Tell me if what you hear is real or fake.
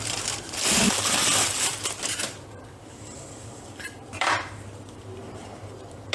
fake